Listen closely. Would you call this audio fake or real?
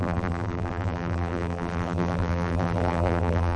fake